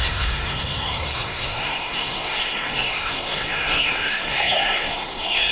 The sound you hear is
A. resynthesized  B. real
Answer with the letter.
A